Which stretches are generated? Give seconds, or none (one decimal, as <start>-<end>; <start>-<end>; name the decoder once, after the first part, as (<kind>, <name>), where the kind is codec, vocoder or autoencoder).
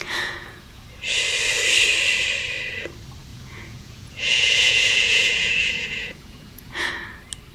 0.0-0.8 (vocoder, Vocos); 3.3-6.9